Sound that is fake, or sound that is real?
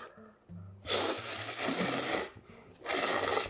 real